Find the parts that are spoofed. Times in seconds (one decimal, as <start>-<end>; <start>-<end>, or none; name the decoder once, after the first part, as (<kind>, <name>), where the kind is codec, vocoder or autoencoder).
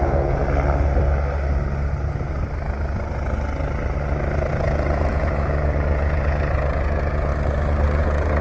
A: 0.0-0.4 (vocoder, Vocos); 4.5-7.3; 8.0-8.4